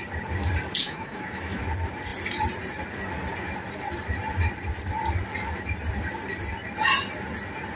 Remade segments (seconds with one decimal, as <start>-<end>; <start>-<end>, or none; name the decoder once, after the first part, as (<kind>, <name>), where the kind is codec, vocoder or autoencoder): 0.8-1.6 (autoencoder, DAC-VAE)